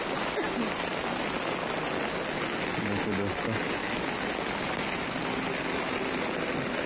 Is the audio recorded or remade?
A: recorded